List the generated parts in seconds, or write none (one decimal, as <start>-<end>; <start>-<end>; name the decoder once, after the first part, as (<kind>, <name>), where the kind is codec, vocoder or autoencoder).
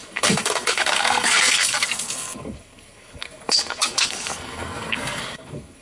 0.0-5.8 (codec, SNAC)